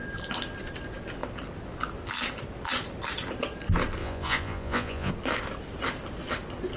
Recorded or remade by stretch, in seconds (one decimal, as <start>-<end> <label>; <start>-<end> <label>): 0.0-4.0 recorded; 4.0-5.1 remade; 5.1-6.8 recorded